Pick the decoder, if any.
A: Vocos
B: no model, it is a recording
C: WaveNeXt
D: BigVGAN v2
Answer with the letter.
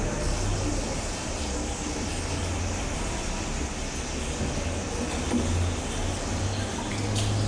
B